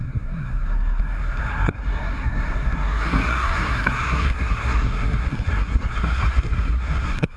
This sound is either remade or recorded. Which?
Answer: remade